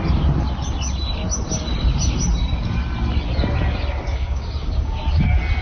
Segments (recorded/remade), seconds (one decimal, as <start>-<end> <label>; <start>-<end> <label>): 0.0-4.1 recorded; 4.1-5.0 remade; 5.0-5.6 recorded